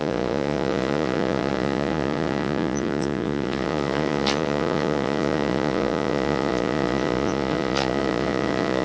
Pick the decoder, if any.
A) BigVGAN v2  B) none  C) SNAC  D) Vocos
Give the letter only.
D